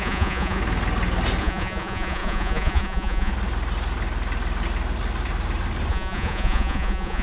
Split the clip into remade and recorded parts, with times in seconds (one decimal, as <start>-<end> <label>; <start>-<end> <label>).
0.0-0.6 remade; 0.6-1.4 recorded; 1.4-3.3 remade; 3.3-5.9 recorded; 5.9-7.2 remade